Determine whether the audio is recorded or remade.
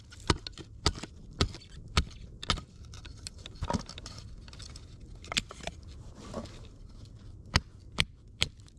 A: recorded